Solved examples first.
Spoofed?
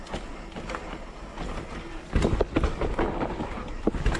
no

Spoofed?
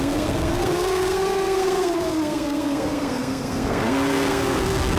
yes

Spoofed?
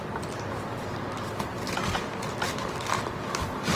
no